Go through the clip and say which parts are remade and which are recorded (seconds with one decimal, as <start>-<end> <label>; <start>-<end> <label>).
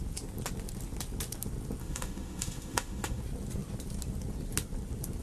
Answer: 0.0-1.8 recorded; 1.8-3.2 remade; 3.2-5.2 recorded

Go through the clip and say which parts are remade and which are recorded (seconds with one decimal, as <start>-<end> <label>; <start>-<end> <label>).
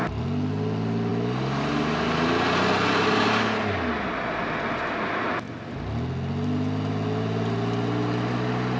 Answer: 0.0-8.8 recorded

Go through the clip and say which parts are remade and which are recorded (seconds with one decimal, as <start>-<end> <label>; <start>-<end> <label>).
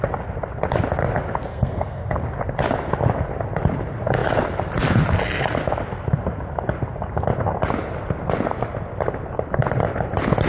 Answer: 0.0-1.5 recorded; 1.5-2.1 remade; 2.1-10.5 recorded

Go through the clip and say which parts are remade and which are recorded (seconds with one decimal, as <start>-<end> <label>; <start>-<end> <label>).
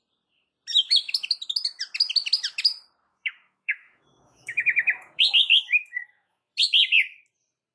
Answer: 0.0-3.1 recorded; 3.1-6.5 remade; 6.5-7.7 recorded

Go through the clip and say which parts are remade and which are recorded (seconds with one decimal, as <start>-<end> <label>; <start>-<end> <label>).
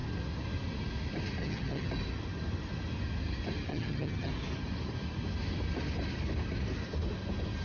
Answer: 0.0-1.4 recorded; 1.4-1.9 remade; 1.9-3.7 recorded; 3.7-4.3 remade; 4.3-7.6 recorded